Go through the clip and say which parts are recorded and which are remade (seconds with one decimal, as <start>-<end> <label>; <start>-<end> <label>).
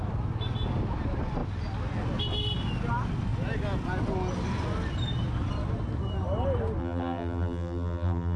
0.0-6.8 recorded; 6.8-8.4 remade